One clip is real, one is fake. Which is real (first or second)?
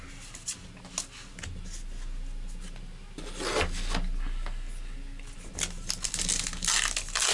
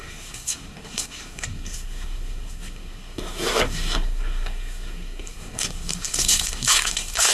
first